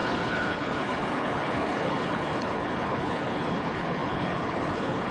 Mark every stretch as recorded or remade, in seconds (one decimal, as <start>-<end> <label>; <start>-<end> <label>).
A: 0.0-5.1 remade